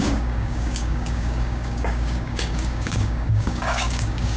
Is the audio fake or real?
fake